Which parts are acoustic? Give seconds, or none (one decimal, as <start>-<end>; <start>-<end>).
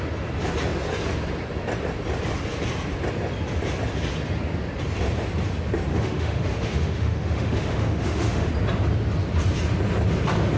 0.0-5.9; 8.5-10.6